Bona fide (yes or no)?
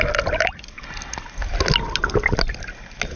yes